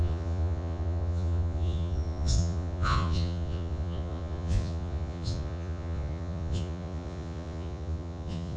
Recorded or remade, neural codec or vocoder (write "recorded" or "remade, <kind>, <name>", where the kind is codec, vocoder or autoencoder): remade, vocoder, Vocos